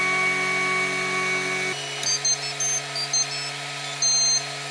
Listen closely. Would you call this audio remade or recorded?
recorded